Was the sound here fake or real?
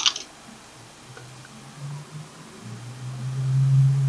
real